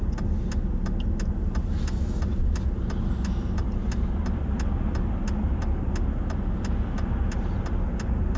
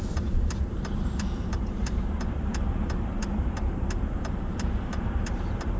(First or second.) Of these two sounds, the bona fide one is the first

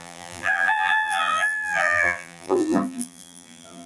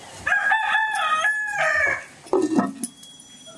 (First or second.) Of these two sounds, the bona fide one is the second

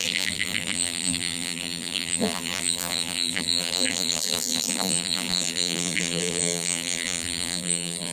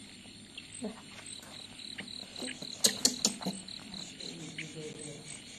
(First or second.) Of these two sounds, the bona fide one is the second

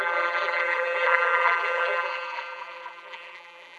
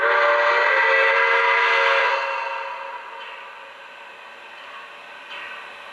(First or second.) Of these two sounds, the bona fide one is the second